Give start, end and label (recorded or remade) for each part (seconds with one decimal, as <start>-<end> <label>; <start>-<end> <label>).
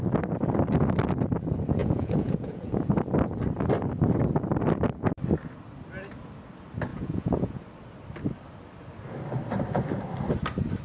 0.0-1.8 recorded; 1.8-3.0 remade; 3.0-6.9 recorded; 6.9-7.6 remade; 7.6-10.8 recorded